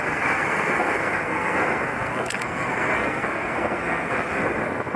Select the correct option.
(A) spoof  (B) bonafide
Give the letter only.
A